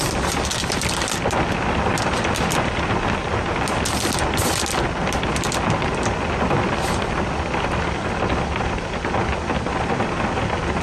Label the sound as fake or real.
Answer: real